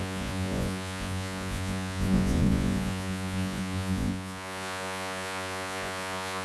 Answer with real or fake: fake